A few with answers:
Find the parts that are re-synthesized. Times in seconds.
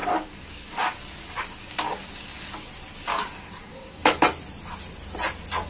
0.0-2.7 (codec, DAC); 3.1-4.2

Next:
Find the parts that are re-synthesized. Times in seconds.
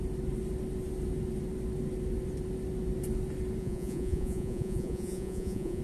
3.6-5.8 (vocoder, Vocos)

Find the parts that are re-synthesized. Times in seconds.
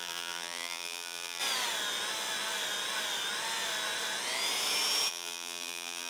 0.0-1.4 (vocoder, BigVGAN v2); 5.1-6.1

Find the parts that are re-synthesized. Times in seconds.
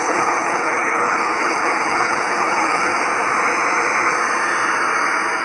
0.0-2.9 (codec, HILCodec)